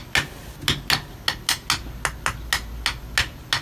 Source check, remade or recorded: recorded